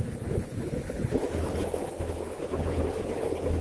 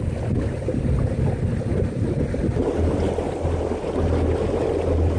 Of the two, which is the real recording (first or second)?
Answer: second